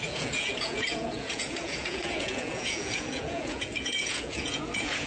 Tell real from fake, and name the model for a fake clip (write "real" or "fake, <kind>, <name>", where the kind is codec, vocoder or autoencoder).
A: fake, vocoder, Vocos